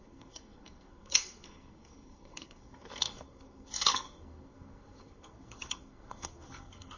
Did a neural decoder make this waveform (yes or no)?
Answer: yes